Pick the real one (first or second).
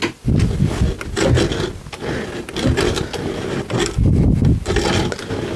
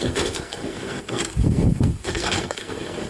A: first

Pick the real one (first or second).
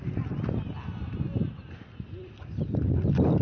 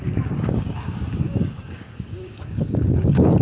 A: first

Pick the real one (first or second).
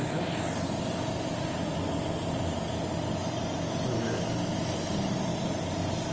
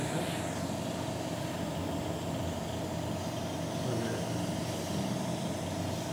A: first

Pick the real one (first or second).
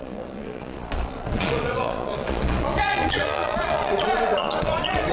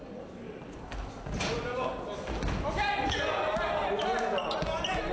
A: second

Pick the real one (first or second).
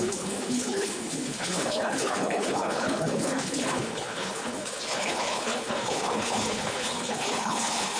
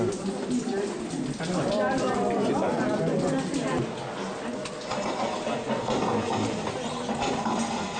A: second